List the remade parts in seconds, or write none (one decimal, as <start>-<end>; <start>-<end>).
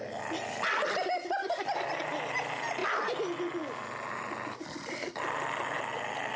none